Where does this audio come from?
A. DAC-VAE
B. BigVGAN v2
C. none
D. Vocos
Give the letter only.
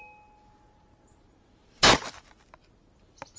C